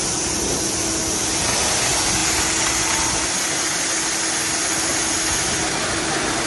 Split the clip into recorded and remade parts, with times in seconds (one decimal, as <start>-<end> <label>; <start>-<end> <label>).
0.0-6.5 recorded

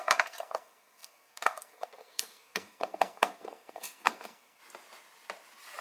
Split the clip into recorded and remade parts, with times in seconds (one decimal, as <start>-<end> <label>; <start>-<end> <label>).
0.0-4.6 remade; 4.6-5.8 recorded

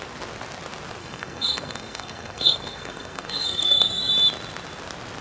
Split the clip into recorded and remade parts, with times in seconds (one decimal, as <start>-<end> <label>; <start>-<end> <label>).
0.0-1.0 recorded; 1.0-4.1 remade; 4.1-5.2 recorded